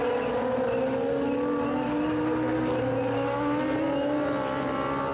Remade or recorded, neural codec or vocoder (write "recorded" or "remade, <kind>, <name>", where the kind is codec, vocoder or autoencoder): recorded